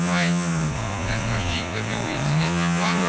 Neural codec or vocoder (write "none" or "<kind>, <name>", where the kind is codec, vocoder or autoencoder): vocoder, Vocos